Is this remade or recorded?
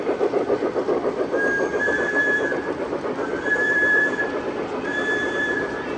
remade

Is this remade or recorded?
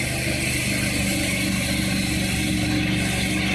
recorded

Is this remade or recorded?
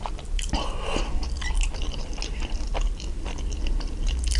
recorded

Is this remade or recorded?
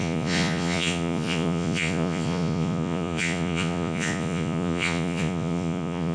remade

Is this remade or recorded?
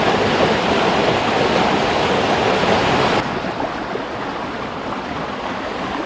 recorded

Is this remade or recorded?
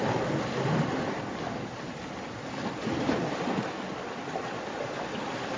recorded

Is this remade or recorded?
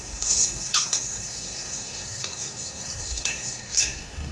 remade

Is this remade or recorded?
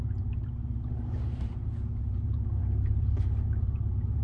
remade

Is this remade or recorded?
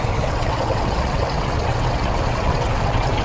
remade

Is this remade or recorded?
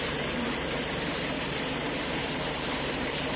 remade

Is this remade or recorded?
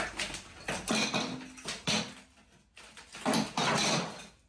recorded